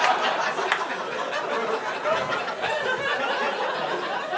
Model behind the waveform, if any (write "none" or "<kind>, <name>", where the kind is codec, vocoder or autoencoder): none